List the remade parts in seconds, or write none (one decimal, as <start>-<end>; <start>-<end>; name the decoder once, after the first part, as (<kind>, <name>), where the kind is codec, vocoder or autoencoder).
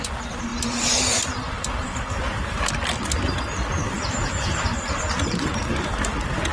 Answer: none